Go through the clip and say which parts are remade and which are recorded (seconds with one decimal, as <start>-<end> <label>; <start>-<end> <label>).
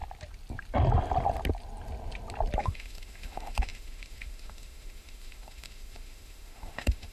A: 0.0-2.6 recorded; 2.6-7.1 remade